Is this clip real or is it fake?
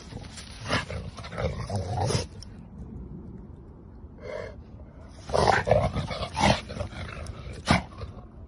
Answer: real